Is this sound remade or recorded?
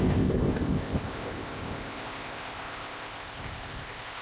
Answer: remade